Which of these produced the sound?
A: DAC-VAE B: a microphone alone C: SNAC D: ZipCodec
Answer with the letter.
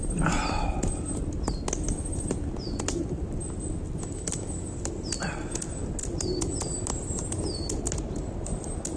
B